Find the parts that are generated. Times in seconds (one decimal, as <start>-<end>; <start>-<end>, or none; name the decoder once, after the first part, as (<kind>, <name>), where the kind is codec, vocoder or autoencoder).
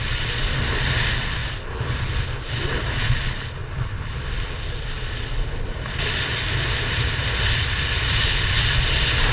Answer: none